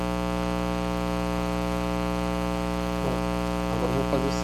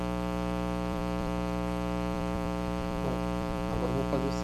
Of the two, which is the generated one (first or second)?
second